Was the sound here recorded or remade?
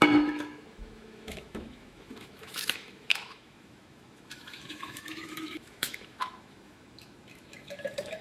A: remade